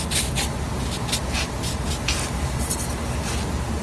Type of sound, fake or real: real